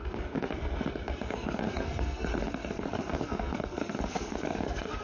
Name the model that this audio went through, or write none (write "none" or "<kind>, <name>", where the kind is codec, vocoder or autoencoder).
codec, SNAC